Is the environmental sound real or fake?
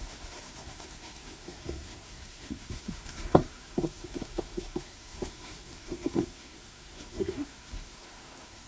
fake